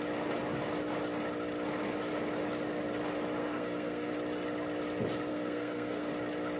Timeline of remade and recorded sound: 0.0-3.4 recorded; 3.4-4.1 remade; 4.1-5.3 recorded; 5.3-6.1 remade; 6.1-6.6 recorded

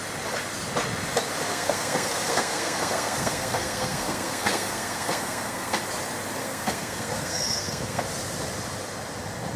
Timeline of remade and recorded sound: 0.0-1.5 recorded; 1.5-5.8 remade; 5.8-6.4 recorded; 6.4-8.0 remade; 8.0-9.6 recorded

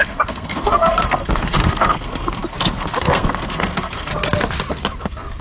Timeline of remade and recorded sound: 0.0-4.1 remade; 4.1-5.0 recorded; 5.0-5.4 remade

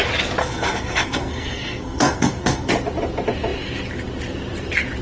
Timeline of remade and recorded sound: 0.0-0.4 recorded; 0.4-2.7 remade; 2.7-5.0 recorded

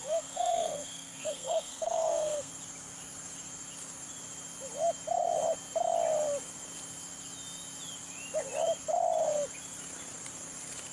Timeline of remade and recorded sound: 0.0-2.5 remade; 2.5-10.9 recorded